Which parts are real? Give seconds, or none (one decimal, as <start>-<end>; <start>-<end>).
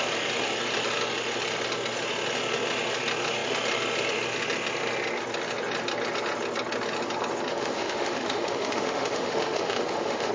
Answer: 0.0-7.5